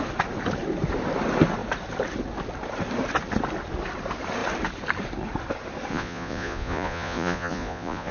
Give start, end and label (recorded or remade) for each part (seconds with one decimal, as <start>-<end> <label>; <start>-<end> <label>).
0.0-5.9 recorded; 5.9-8.1 remade